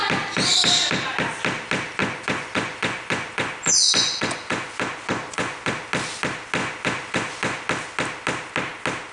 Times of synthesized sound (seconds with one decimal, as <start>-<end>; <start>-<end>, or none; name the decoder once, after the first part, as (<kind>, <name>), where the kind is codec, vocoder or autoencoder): 2.0-5.7 (vocoder, Vocos); 6.6-7.7